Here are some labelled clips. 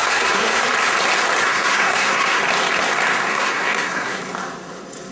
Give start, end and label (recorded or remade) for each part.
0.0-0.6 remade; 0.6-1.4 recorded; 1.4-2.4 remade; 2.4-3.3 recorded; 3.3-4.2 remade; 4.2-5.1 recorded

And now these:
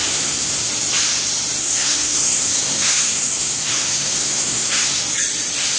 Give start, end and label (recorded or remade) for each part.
0.0-0.7 remade; 0.7-1.6 recorded; 1.6-5.0 remade; 5.0-5.8 recorded

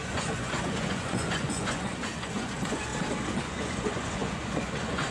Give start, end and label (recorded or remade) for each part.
0.0-2.9 remade; 2.9-3.4 recorded; 3.4-5.1 remade